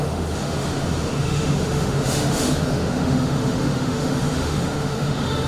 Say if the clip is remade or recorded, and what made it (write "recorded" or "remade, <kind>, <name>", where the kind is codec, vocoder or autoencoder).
remade, autoencoder, DAC-VAE